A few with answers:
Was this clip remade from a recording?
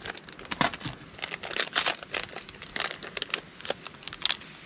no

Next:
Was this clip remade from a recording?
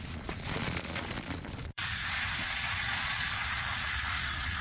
yes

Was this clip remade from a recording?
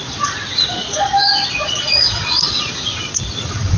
yes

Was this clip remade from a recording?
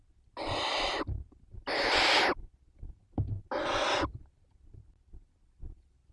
no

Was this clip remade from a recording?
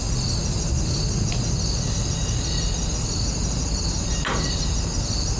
no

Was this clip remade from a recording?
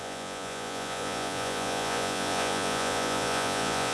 yes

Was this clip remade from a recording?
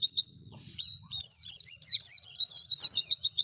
yes